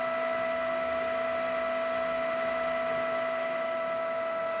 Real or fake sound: real